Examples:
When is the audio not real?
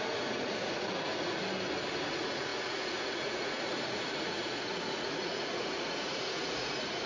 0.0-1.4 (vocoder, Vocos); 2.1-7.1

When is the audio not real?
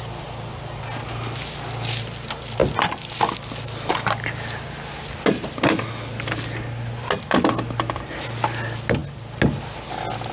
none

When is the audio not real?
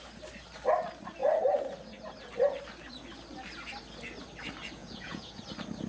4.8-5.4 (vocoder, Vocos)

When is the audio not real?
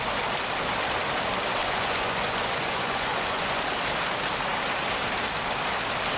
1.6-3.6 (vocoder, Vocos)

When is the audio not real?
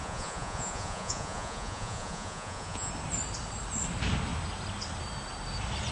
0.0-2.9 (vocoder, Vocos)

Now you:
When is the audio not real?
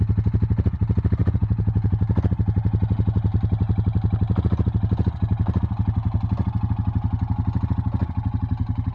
1.2-1.9 (vocoder, Vocos)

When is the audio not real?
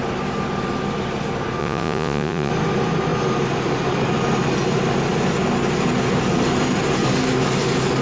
1.6-2.5 (vocoder, Vocos)